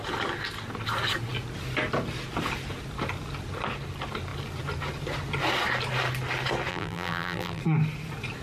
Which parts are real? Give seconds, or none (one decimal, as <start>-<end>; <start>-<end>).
0.0-6.7; 7.6-8.4